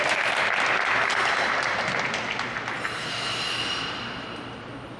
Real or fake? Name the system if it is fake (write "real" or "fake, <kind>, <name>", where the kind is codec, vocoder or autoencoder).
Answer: real